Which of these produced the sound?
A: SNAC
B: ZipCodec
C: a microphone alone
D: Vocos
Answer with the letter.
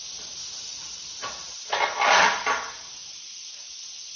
C